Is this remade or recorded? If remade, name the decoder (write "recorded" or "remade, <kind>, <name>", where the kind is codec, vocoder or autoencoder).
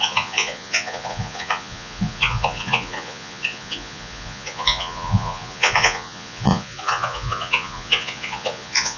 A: remade, vocoder, Vocos